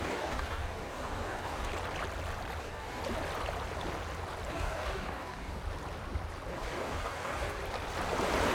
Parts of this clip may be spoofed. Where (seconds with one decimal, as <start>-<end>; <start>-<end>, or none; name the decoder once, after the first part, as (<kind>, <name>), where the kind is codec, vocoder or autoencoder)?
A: 0.0-1.7 (codec, DAC); 2.6-3.0; 4.5-5.6; 6.5-7.6